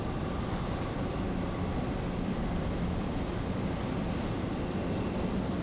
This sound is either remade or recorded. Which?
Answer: recorded